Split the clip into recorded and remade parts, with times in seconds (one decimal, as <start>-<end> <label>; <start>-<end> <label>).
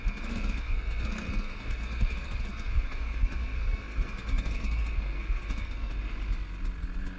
0.0-5.9 remade; 5.9-7.2 recorded